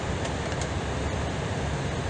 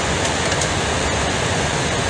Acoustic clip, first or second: first